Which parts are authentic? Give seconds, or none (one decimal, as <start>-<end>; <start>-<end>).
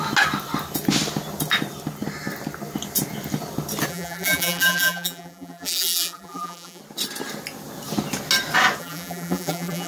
0.0-3.9; 6.8-8.8